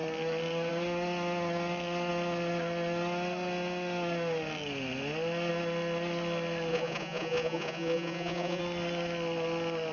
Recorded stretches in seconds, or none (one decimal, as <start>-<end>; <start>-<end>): 0.0-6.7; 8.6-9.9